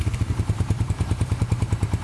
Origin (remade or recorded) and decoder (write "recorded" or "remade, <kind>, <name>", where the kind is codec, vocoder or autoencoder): remade, vocoder, BigVGAN v2